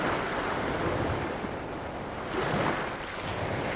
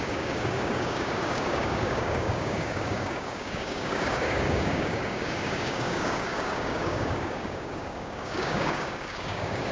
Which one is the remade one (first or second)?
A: second